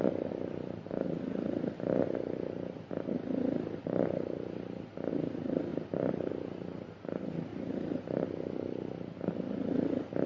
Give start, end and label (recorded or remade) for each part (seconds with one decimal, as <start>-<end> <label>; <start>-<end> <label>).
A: 0.0-10.3 recorded